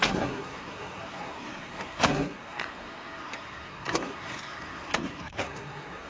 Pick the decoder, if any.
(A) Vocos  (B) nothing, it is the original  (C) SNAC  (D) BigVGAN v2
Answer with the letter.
C